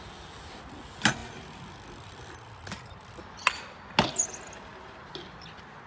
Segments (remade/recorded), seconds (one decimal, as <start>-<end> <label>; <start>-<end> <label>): 0.0-5.9 recorded